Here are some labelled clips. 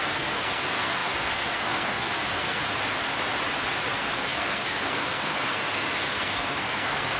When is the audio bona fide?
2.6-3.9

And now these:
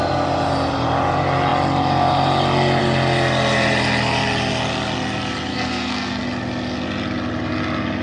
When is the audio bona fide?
0.0-5.5; 6.2-8.0